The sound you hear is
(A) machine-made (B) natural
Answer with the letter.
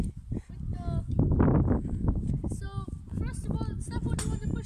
B